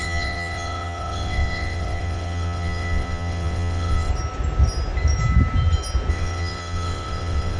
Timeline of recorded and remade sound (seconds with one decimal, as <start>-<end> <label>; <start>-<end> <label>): 0.0-4.1 remade; 4.1-6.1 recorded; 6.1-7.6 remade